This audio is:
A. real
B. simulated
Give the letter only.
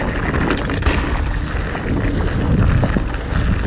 A